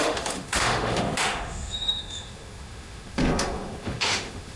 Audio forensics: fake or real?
fake